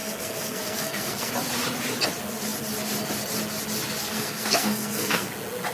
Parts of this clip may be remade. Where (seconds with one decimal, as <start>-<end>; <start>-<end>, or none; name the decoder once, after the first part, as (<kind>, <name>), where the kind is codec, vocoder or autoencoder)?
0.0-1.3 (codec, SNAC); 4.0-5.3